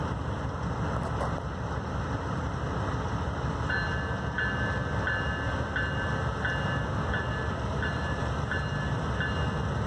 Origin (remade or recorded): recorded